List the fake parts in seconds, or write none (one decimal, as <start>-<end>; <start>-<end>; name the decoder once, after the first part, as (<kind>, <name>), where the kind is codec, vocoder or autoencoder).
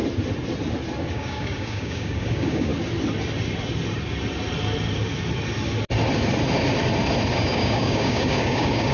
1.1-2.7 (codec, DAC); 7.3-8.9